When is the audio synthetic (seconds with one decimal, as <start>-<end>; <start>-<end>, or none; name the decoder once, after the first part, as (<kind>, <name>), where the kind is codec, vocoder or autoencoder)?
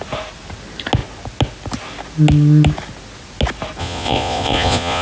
3.8-5.0 (vocoder, Vocos)